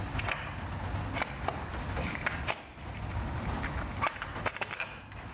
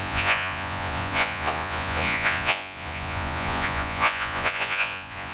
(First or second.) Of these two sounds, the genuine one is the first